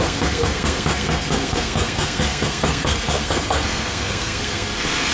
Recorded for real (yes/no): no